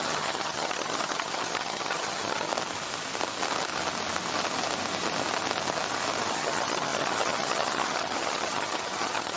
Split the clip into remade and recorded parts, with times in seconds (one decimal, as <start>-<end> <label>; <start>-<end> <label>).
0.0-2.5 remade; 2.5-6.3 recorded; 6.3-9.4 remade